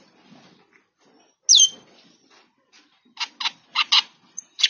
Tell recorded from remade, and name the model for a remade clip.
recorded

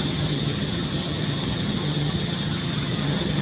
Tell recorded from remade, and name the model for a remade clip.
remade, vocoder, HiFi-GAN